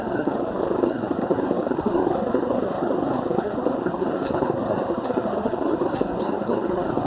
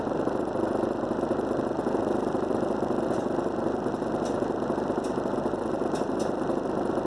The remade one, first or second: first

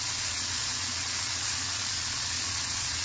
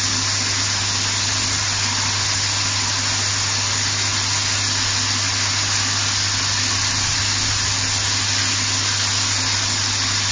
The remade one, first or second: first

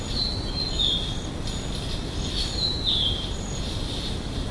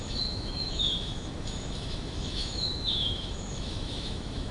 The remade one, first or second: second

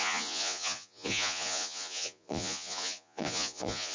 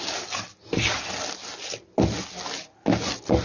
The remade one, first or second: first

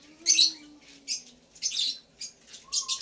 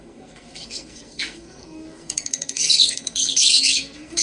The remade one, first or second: second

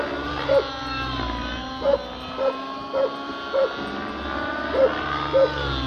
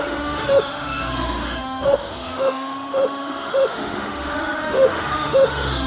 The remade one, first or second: second